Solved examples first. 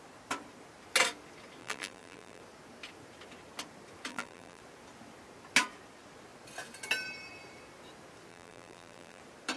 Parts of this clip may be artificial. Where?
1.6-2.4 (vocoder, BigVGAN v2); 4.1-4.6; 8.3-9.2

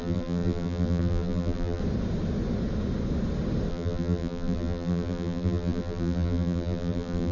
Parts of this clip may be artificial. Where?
0.0-1.8 (vocoder, BigVGAN v2); 3.7-7.3